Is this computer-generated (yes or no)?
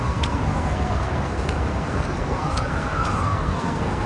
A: yes